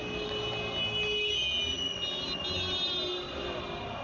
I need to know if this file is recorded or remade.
recorded